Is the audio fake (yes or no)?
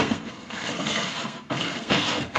yes